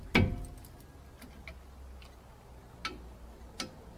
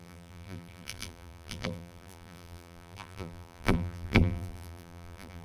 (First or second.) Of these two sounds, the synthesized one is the second